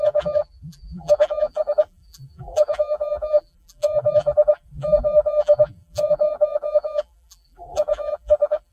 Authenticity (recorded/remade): remade